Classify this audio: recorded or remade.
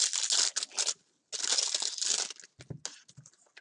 recorded